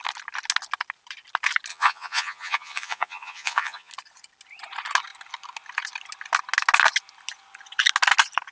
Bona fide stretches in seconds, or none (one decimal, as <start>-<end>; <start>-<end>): 0.0-1.7; 3.9-8.5